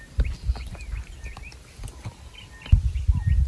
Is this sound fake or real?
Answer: real